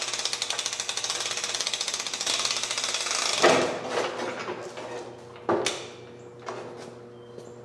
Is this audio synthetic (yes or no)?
no